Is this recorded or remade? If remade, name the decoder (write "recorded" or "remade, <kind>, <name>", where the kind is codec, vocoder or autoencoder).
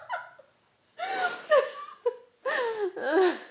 recorded